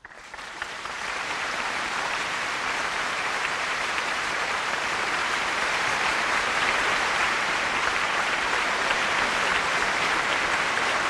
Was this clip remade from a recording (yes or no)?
yes